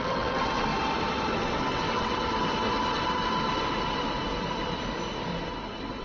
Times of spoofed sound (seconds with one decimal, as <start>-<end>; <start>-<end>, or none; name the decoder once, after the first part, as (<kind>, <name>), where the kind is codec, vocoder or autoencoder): 0.0-0.7 (vocoder, WaveNeXt); 1.4-2.2